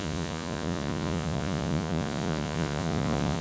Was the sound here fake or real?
fake